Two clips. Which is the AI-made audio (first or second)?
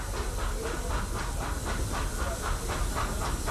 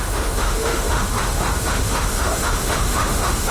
second